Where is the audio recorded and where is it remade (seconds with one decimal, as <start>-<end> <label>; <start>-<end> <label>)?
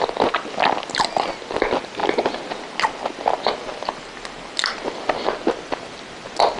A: 0.0-6.6 recorded